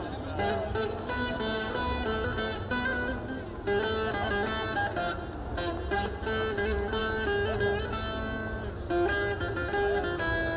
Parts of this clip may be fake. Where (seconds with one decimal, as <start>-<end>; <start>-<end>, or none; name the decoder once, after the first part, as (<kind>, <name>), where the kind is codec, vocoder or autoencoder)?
none